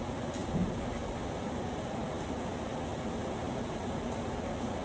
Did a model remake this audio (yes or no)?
no